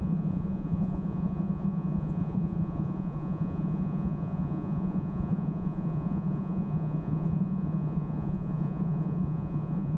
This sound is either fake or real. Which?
fake